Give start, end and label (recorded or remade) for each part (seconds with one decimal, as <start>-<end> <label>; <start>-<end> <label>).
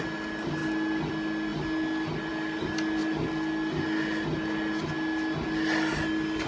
0.0-6.5 recorded